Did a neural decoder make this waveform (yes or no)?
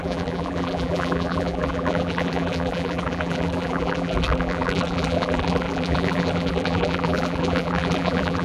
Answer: yes